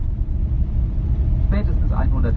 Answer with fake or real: real